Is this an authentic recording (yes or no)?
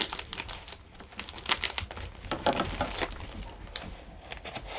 yes